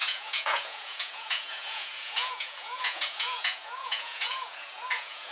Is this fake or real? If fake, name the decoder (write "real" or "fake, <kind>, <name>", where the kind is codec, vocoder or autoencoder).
fake, vocoder, Vocos